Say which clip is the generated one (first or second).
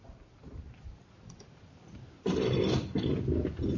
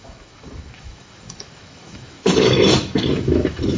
second